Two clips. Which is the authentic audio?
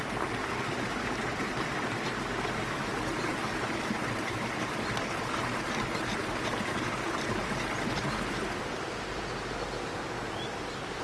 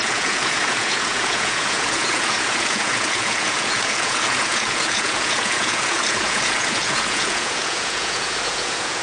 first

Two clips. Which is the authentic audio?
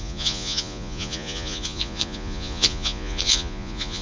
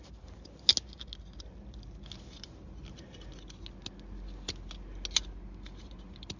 second